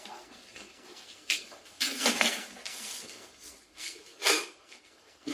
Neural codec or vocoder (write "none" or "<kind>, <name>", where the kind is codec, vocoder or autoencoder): codec, SNAC